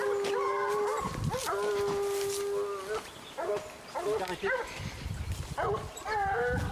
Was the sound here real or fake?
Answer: real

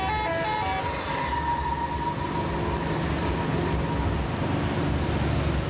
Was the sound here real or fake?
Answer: real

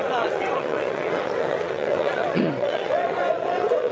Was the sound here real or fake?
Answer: fake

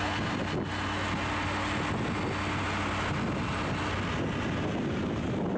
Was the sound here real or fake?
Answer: real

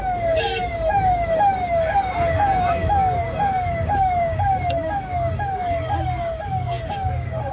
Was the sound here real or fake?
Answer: fake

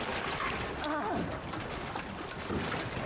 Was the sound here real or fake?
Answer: real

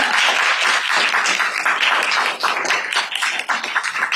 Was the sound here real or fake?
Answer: real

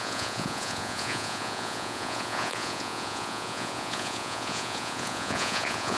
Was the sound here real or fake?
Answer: fake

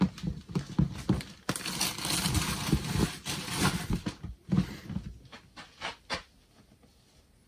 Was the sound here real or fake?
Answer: real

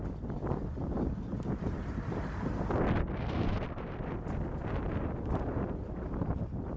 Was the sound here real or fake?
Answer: fake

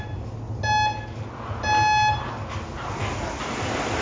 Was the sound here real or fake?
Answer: real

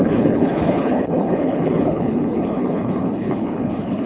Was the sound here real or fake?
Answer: fake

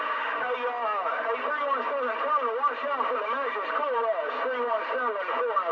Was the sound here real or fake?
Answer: real